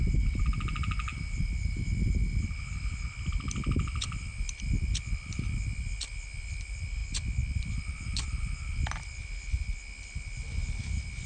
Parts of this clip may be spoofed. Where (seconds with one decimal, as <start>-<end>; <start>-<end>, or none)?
none

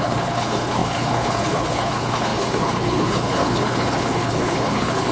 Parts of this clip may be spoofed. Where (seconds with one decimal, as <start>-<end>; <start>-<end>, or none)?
0.0-5.1

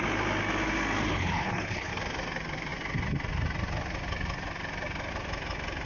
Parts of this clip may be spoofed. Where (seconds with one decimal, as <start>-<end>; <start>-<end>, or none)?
1.1-1.9

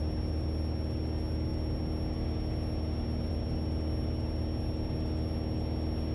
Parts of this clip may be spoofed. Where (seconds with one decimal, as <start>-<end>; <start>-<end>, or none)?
none

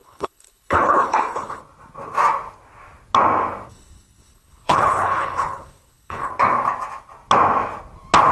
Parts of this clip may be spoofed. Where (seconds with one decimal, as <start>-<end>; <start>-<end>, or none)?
0.0-1.6; 3.7-6.3

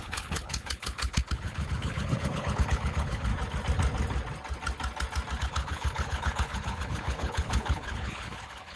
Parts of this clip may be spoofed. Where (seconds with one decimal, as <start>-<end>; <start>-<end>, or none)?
0.0-3.3; 5.4-8.8